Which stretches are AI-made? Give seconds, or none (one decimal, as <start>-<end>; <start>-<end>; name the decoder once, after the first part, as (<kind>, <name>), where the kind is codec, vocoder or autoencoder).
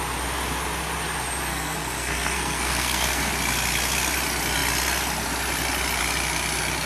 1.5-3.3 (codec, SNAC)